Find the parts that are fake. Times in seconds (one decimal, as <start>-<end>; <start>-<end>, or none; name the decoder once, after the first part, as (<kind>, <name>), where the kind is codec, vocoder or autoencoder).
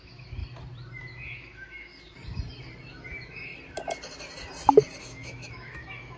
0.0-0.4 (autoencoder, DAC-VAE); 1.0-1.9; 2.9-3.5; 5.0-6.2